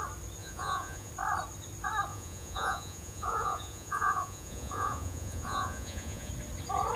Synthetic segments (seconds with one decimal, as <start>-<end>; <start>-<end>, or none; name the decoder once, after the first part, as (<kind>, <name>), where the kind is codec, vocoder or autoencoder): 0.4-1.1 (vocoder, Vocos); 2.1-6.3